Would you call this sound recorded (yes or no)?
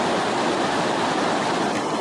yes